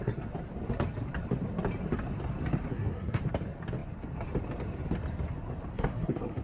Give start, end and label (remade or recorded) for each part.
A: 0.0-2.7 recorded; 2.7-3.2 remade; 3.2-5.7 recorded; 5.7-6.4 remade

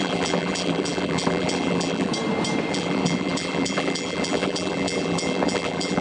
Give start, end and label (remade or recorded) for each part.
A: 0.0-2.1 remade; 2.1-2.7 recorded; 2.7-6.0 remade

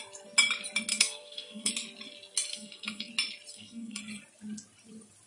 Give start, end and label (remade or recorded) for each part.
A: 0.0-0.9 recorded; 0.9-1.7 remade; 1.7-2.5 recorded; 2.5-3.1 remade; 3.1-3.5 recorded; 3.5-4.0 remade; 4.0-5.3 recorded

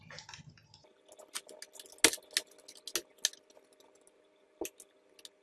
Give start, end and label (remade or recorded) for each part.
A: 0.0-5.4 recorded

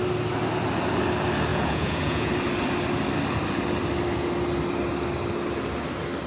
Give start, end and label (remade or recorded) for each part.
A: 0.0-1.5 recorded; 1.5-2.3 remade; 2.3-6.3 recorded